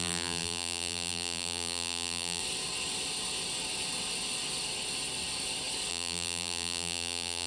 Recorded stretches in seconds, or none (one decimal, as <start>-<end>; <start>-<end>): 2.4-5.9